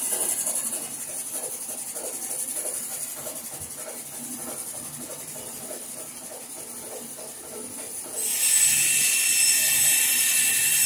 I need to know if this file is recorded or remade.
remade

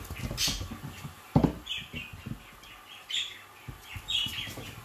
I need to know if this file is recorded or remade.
recorded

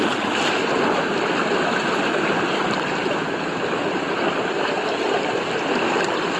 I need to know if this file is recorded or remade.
remade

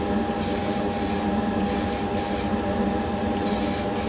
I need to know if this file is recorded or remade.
recorded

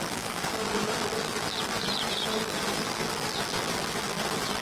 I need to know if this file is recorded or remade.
remade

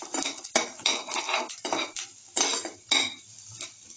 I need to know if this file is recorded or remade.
remade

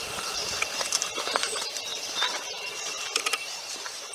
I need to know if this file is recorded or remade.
remade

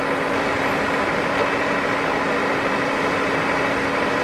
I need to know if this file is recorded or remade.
recorded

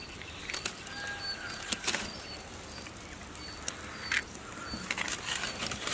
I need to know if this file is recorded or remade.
recorded